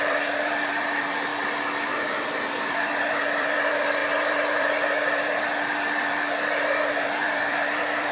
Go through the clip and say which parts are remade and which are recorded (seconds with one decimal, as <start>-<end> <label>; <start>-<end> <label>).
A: 0.0-1.3 remade; 1.3-2.1 recorded; 2.1-8.1 remade